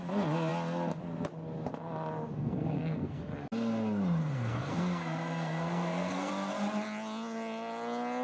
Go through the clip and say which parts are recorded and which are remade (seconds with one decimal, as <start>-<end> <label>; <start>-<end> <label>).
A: 0.0-2.4 recorded; 2.4-3.2 remade; 3.2-4.2 recorded; 4.2-6.3 remade; 6.3-8.2 recorded